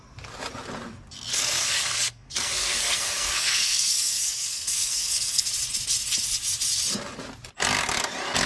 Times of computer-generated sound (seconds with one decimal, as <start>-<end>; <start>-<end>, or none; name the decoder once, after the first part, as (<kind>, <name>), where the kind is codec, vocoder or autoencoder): 1.3-5.5 (codec, SNAC)